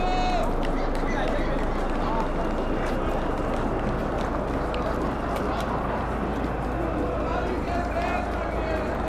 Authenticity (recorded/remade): recorded